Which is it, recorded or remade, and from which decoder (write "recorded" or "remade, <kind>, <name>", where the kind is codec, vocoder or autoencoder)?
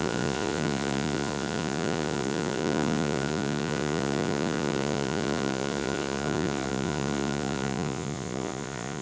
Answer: remade, vocoder, Vocos